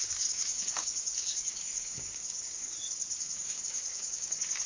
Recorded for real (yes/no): no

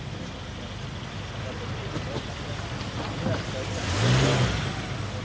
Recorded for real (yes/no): yes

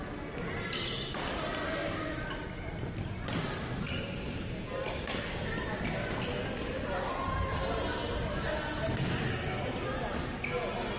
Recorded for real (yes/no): yes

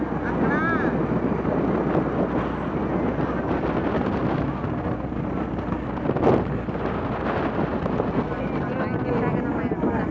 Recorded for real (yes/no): yes